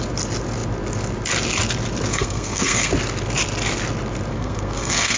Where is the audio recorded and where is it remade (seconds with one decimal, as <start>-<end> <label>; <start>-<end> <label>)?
0.0-2.1 recorded; 2.1-2.9 remade; 2.9-4.3 recorded; 4.3-5.2 remade